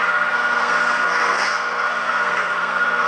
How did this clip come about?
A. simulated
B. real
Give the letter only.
A